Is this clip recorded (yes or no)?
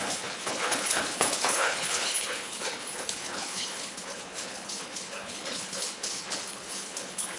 no